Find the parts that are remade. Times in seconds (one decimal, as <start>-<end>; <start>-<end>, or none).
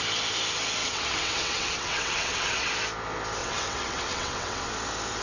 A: 0.8-2.7; 3.4-4.7